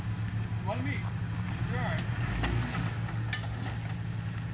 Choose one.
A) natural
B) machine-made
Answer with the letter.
A